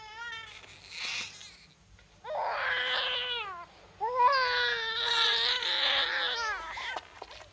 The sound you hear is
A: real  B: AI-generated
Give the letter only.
A